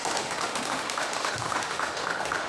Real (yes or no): no